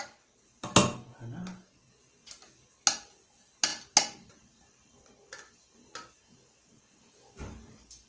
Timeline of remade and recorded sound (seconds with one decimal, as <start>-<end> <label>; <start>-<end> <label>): 0.0-8.1 recorded